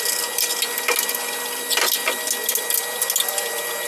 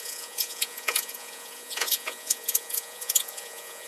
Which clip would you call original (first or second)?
first